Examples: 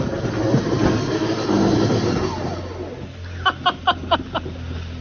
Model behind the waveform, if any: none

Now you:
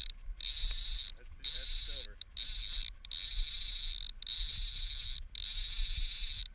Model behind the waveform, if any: none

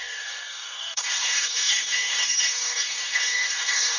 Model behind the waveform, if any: codec, DAC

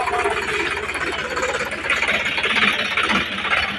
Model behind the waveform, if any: none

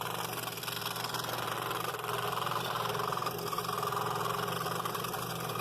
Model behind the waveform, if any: none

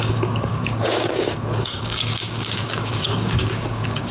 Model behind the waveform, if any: codec, DAC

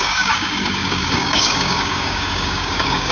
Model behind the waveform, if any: codec, DAC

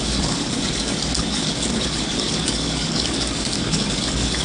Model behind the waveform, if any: codec, DAC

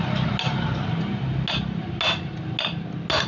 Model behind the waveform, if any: none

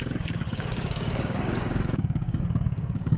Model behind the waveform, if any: codec, DAC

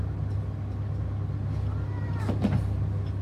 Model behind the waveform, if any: none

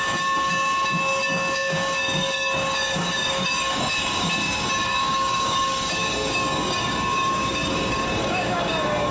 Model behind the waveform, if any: codec, DAC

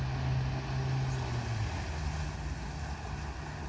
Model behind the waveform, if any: none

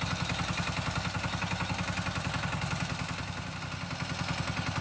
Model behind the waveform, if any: none